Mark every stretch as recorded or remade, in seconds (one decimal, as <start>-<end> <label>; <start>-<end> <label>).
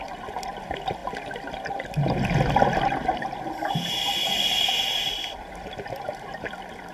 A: 0.0-6.9 recorded